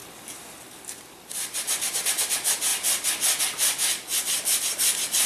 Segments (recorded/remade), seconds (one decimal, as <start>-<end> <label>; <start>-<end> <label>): 0.0-5.3 recorded